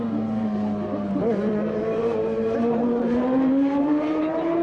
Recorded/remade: remade